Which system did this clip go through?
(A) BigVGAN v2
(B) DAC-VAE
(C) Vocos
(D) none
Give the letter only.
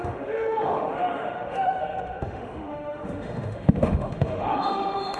B